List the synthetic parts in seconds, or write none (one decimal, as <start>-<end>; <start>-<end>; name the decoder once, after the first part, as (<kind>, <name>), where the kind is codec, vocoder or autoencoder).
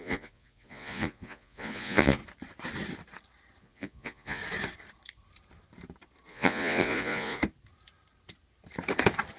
0.0-2.2 (vocoder, Vocos); 3.6-4.4; 6.3-7.4